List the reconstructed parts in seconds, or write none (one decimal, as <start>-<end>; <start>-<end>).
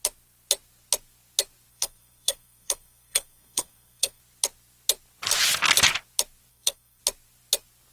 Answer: 1.7-4.2; 6.5-7.0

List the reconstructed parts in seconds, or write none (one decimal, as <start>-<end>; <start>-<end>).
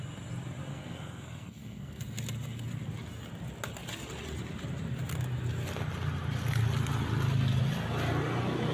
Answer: 0.7-2.0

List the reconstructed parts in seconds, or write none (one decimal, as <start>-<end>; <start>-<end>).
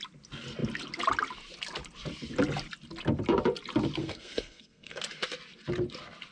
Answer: 4.0-5.0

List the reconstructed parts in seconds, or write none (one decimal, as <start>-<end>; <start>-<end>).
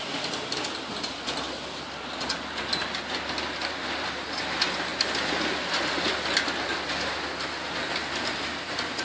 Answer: none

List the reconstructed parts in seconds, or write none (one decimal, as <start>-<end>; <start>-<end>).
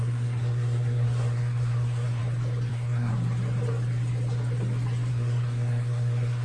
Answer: 0.0-2.2; 2.7-3.1; 5.1-6.4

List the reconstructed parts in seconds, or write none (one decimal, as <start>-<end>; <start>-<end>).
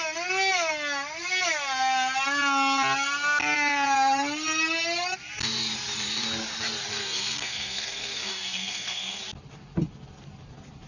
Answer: 6.9-9.2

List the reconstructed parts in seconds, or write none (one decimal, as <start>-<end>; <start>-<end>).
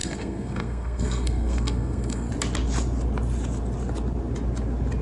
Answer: 0.0-2.3